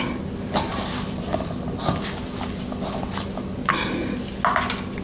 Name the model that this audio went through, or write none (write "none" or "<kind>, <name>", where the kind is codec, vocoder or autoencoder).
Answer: none